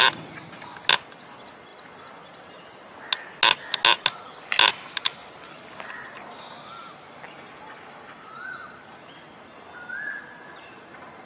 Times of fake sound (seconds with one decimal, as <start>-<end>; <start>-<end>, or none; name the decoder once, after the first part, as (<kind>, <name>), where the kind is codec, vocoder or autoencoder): none